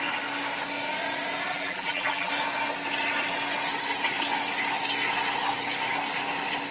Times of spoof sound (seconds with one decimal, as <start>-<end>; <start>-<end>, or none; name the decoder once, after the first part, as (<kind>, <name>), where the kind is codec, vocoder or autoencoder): 1.5-2.3 (vocoder, BigVGAN v2)